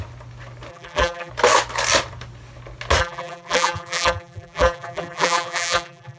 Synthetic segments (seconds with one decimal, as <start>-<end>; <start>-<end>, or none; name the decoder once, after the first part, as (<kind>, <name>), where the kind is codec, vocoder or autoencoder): 0.7-1.3 (vocoder, BigVGAN v2); 3.0-6.2